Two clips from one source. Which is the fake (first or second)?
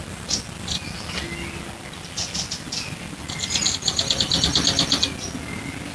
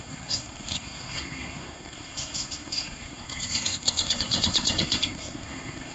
second